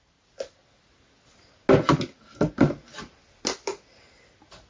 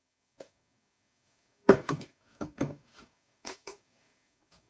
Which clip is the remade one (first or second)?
second